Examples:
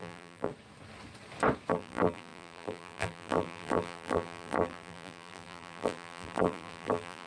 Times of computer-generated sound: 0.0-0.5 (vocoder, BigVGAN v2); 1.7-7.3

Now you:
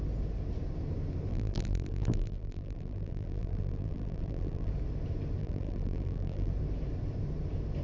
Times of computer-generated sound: 1.3-4.7 (vocoder, BigVGAN v2); 5.4-6.5

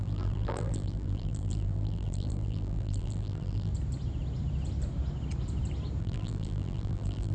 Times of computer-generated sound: 0.0-3.7 (vocoder, BigVGAN v2); 6.0-7.3

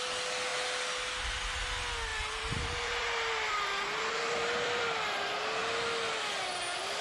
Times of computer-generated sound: 2.1-4.8 (vocoder, BigVGAN v2)

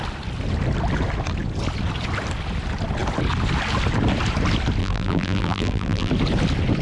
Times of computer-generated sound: 4.8-6.1 (vocoder, BigVGAN v2)

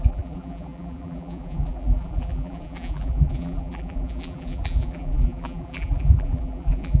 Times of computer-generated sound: 0.0-7.0 (vocoder, BigVGAN v2)